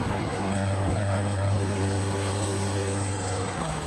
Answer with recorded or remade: remade